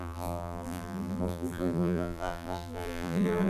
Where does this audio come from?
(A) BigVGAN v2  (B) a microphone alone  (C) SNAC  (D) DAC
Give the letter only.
A